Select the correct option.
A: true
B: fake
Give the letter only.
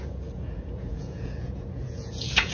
B